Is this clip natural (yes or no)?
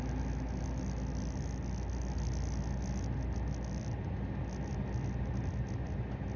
yes